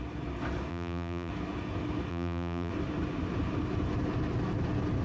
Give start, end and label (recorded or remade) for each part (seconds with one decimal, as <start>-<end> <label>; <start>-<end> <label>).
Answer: 0.0-0.7 recorded; 0.7-1.3 remade; 1.3-2.1 recorded; 2.1-2.7 remade; 2.7-5.0 recorded